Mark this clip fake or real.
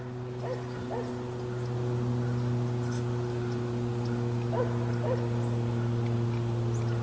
real